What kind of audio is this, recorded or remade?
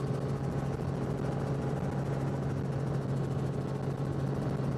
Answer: recorded